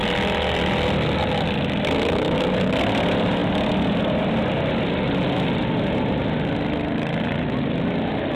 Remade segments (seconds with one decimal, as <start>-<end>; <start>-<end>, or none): none